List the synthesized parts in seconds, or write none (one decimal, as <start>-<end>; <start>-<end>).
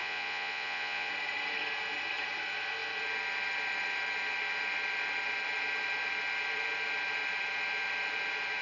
0.0-1.1